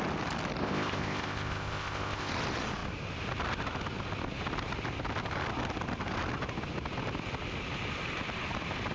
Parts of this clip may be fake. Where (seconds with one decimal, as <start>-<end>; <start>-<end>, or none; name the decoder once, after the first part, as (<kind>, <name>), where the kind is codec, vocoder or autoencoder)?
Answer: 0.6-2.3 (codec, ZipCodec)